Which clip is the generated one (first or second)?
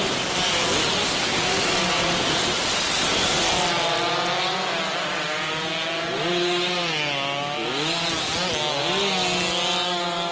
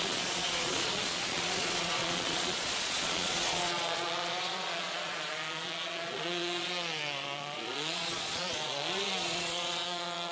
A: second